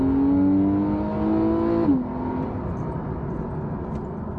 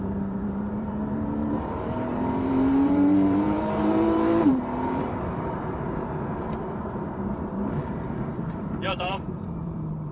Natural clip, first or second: first